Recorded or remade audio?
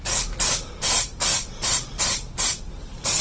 recorded